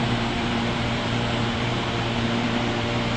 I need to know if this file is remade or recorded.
remade